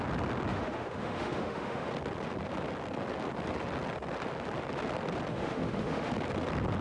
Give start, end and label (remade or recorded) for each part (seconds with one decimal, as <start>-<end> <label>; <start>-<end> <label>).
0.0-0.5 recorded; 0.5-1.9 remade; 1.9-5.3 recorded; 5.3-6.1 remade; 6.1-6.8 recorded